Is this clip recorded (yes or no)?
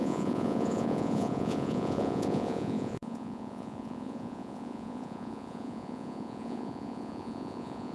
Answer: no